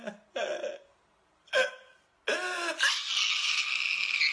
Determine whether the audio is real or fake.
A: real